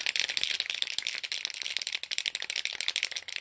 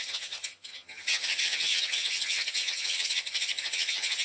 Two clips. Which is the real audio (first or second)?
first